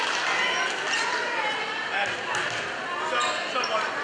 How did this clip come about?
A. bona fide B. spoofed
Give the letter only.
A